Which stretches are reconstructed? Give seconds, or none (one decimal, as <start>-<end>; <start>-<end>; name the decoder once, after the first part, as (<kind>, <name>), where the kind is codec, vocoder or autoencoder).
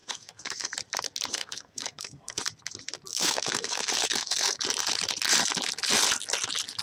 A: 0.0-0.7 (codec, SNAC); 1.3-2.4; 3.1-4.6